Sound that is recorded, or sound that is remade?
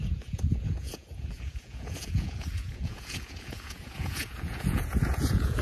remade